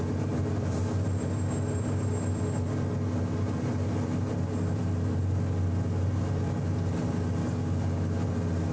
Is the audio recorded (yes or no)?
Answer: yes